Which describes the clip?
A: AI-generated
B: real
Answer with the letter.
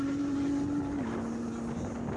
B